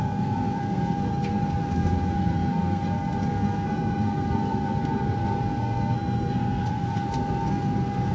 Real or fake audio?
fake